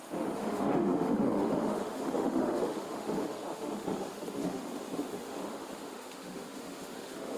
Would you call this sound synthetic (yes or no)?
yes